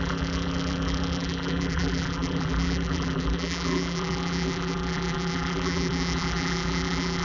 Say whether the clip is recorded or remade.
remade